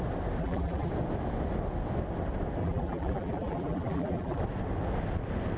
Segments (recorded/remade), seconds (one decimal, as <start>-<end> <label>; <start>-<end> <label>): 0.0-0.4 recorded; 0.4-0.9 remade; 0.9-2.6 recorded; 2.6-4.4 remade; 4.4-5.6 recorded